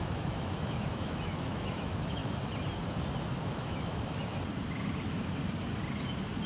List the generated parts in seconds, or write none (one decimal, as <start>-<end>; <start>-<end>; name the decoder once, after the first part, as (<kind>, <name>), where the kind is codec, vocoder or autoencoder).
0.0-2.2 (autoencoder, DAC-VAE); 3.4-4.3